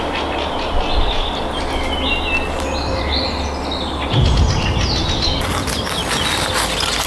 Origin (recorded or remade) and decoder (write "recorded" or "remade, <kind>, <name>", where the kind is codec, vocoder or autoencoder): recorded